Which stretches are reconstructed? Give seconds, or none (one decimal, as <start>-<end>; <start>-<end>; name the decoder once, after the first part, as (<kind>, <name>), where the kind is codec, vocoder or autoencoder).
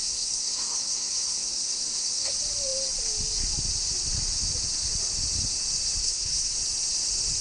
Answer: 0.0-2.3 (codec, SNAC); 6.0-6.6